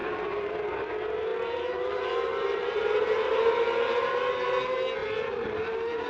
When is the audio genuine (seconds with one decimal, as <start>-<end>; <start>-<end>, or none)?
0.5-1.3; 4.1-5.0